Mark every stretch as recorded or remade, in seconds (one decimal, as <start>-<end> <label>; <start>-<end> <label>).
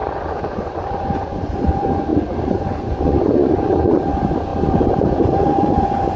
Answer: 0.0-6.2 remade